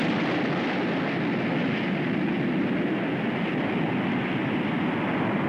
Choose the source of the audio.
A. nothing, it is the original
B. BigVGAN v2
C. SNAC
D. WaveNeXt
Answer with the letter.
A